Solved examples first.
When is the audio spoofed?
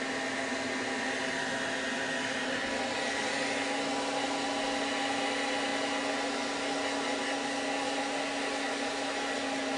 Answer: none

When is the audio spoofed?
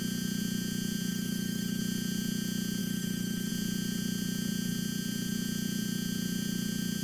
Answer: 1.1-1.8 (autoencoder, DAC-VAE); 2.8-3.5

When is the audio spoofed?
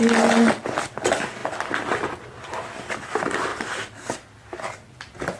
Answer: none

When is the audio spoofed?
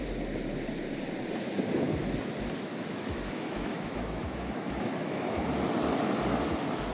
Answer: 2.7-5.3 (autoencoder, DAC-VAE)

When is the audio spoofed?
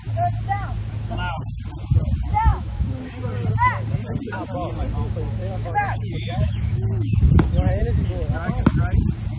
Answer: 2.5-3.0 (autoencoder, DAC-VAE); 5.4-7.3